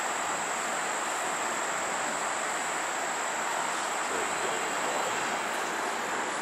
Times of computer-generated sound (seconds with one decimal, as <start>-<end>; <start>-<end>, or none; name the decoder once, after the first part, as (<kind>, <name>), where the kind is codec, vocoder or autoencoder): none